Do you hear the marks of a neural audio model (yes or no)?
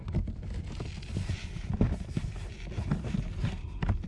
yes